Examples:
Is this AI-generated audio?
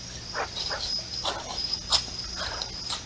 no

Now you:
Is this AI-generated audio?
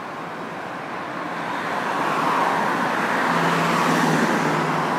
no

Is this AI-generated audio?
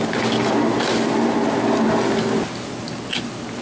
no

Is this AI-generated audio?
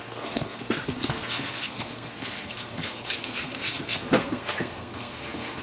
yes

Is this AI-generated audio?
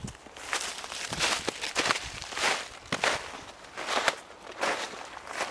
no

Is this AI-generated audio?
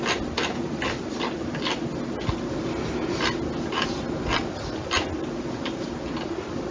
no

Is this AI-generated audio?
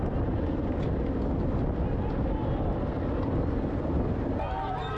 no